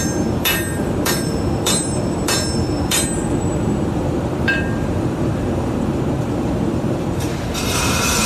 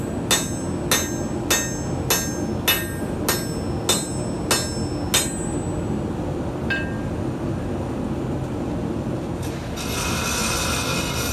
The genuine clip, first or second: second